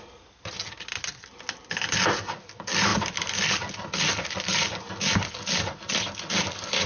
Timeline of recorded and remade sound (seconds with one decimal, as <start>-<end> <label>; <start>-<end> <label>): 0.0-6.9 recorded